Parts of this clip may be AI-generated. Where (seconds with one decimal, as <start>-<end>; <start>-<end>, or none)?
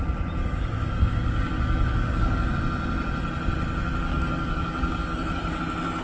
0.4-2.5; 4.1-5.6